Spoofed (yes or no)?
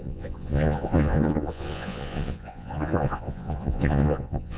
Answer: yes